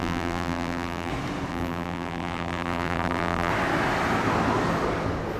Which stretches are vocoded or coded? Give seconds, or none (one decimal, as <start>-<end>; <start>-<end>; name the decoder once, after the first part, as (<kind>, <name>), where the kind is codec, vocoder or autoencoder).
0.0-1.1 (vocoder, BigVGAN v2); 1.5-3.5